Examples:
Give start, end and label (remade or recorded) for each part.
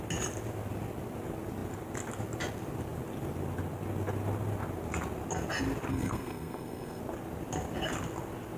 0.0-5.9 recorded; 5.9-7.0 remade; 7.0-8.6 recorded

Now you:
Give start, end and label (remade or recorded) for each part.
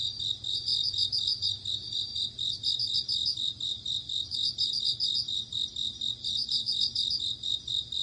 0.0-8.0 remade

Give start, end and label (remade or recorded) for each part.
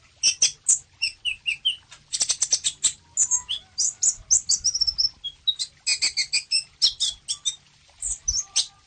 0.0-8.9 recorded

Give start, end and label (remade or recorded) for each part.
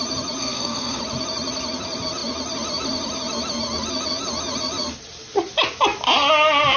0.0-0.4 recorded; 0.4-1.0 remade; 1.0-6.8 recorded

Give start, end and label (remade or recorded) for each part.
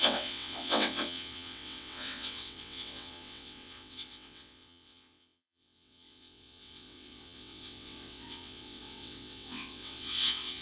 0.0-10.6 remade